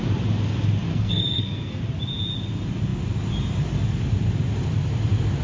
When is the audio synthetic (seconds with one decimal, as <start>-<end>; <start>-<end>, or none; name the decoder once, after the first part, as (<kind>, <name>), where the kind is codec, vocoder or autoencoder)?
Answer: 0.9-1.8 (codec, SNAC)